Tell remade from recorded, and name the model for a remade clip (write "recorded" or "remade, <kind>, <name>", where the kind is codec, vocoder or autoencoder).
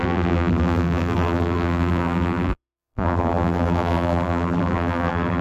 remade, vocoder, BigVGAN v2